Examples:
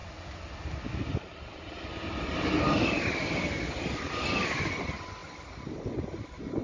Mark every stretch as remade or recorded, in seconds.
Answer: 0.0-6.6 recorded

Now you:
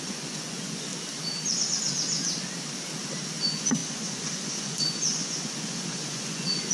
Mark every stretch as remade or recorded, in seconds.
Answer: 0.0-0.9 remade; 0.9-3.4 recorded; 3.4-6.7 remade

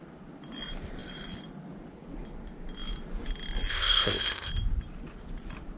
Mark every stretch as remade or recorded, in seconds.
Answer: 0.0-3.7 recorded; 3.7-4.5 remade; 4.5-5.8 recorded

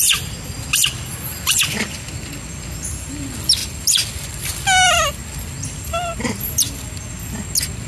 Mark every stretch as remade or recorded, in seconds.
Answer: 0.0-7.9 recorded

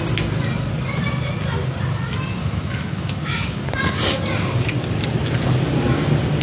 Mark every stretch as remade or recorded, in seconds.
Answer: 0.0-2.4 recorded; 2.4-3.7 remade; 3.7-6.4 recorded

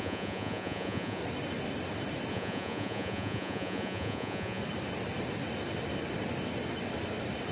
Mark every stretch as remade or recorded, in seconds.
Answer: 0.0-1.2 remade; 1.2-2.3 recorded; 2.3-4.6 remade; 4.6-7.5 recorded

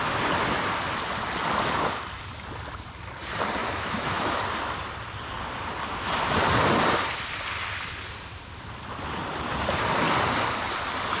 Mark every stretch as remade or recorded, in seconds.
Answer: 0.0-3.6 recorded; 3.6-4.4 remade; 4.4-11.2 recorded